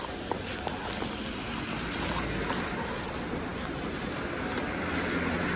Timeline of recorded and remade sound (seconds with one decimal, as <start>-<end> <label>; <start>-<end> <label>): 0.0-5.6 recorded